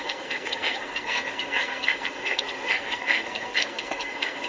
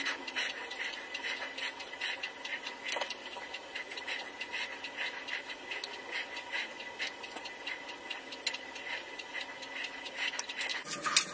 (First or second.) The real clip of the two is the second